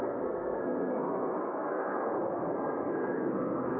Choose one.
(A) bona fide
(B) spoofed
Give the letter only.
B